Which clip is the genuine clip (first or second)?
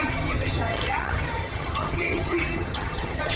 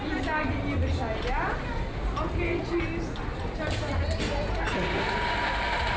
second